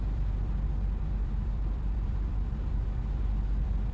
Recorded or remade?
remade